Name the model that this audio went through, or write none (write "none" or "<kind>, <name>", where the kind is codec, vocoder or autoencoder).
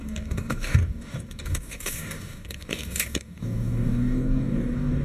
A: codec, DAC